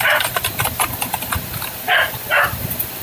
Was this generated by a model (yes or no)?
no